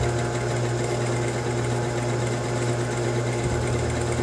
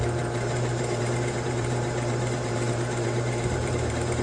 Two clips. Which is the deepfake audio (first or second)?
second